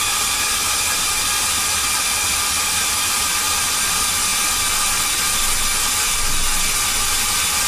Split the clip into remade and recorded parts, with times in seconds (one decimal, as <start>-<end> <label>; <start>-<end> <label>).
0.0-7.7 recorded

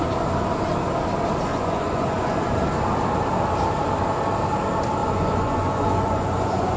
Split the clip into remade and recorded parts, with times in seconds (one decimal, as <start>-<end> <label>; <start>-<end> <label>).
0.0-1.5 recorded; 1.5-2.5 remade; 2.5-5.0 recorded; 5.0-6.8 remade